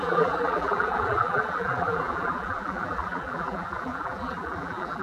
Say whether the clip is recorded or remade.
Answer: remade